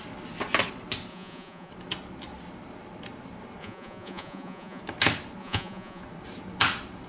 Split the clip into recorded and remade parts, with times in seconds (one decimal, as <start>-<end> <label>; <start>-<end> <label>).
0.0-1.1 recorded; 1.1-1.7 remade; 1.7-3.6 recorded; 3.6-4.8 remade; 4.8-5.4 recorded; 5.4-6.0 remade; 6.0-7.1 recorded

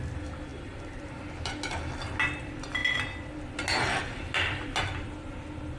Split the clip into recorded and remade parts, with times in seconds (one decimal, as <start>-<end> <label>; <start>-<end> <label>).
0.0-5.8 recorded

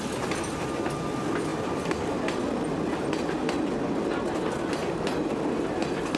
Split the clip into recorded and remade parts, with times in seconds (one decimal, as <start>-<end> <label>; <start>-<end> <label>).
0.0-6.2 recorded

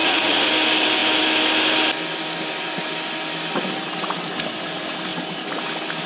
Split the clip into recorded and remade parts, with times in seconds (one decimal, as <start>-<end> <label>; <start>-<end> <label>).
0.0-0.5 remade; 0.5-6.1 recorded

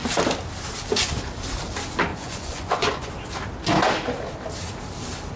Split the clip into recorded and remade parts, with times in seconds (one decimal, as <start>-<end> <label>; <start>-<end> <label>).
0.0-2.1 recorded; 2.1-3.1 remade; 3.1-5.4 recorded

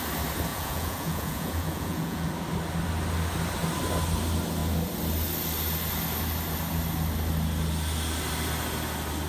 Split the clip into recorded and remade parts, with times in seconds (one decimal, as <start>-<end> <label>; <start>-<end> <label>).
0.0-0.5 recorded; 0.5-2.3 remade; 2.3-9.3 recorded

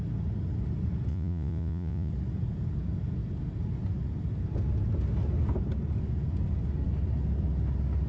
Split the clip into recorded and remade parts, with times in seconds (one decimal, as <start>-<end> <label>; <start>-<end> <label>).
0.0-1.1 recorded; 1.1-2.1 remade; 2.1-8.1 recorded